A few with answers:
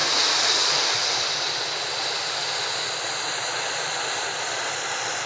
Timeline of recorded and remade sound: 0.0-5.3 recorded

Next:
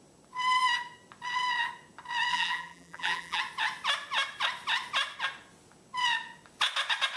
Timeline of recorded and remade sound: 0.0-2.3 recorded; 2.3-3.4 remade; 3.4-7.2 recorded